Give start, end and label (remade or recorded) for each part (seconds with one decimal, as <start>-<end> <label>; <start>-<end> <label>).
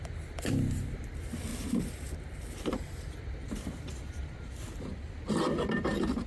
0.0-1.5 remade; 1.5-3.9 recorded; 3.9-4.9 remade; 4.9-5.7 recorded; 5.7-6.3 remade